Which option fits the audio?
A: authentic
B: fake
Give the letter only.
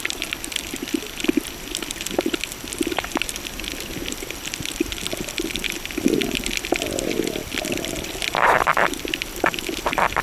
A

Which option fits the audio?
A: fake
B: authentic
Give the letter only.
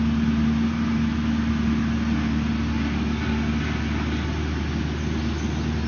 B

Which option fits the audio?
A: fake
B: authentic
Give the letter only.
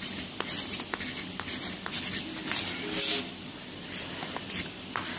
A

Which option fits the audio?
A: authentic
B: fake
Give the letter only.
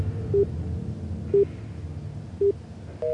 A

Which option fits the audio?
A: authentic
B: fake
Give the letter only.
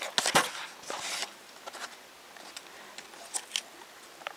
A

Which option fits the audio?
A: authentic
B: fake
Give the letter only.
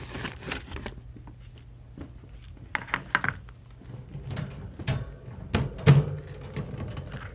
A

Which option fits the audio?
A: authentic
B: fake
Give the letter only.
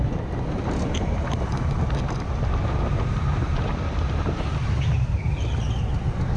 A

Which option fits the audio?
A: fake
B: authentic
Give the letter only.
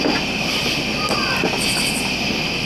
B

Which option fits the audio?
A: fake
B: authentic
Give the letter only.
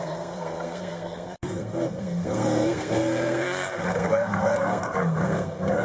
A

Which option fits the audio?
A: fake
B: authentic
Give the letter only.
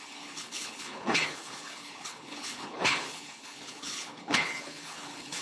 A